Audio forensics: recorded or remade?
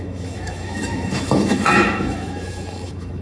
remade